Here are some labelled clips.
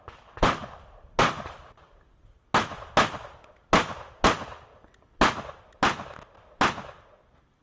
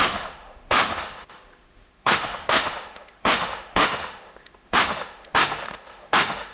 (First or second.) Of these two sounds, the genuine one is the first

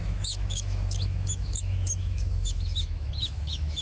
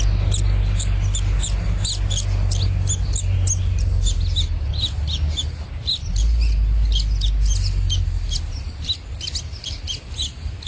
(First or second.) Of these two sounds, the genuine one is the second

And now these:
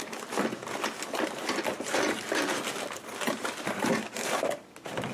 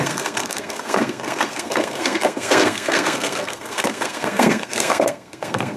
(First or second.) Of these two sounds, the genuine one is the first